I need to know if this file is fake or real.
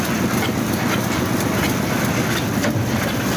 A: real